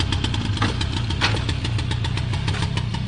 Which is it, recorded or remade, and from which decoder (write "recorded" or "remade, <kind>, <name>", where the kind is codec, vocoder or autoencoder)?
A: recorded